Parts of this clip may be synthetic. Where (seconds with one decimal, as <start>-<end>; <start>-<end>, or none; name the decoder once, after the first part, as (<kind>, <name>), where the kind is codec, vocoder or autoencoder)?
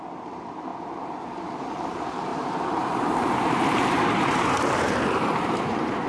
0.0-6.1 (vocoder, BigVGAN v2)